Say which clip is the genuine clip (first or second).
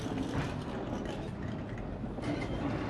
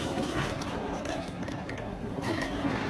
first